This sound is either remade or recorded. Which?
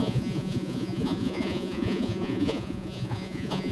remade